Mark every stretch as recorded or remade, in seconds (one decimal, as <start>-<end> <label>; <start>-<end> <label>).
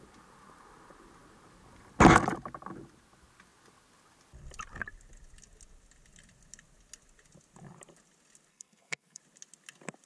0.0-8.5 recorded; 8.5-9.2 remade; 9.2-10.1 recorded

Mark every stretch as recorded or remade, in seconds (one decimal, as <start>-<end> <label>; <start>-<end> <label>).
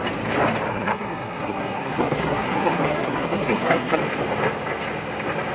0.0-0.7 recorded; 0.7-4.0 remade; 4.0-5.5 recorded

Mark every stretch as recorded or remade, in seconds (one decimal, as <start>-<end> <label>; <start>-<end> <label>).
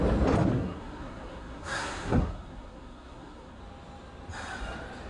0.0-0.5 recorded; 0.5-3.6 remade; 3.6-5.1 recorded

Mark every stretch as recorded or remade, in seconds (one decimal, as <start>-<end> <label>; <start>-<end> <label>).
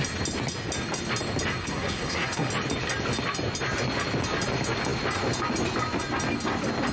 0.0-1.6 recorded; 1.6-2.5 remade; 2.5-6.9 recorded